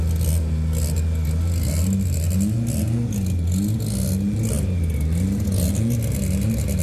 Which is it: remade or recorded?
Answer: recorded